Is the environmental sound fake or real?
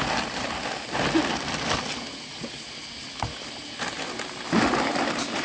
real